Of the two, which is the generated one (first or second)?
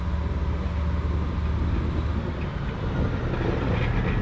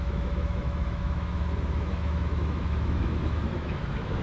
second